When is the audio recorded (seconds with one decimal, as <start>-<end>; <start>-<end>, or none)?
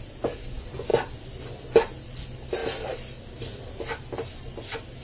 0.0-5.0